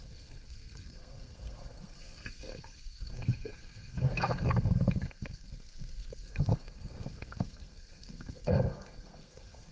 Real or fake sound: fake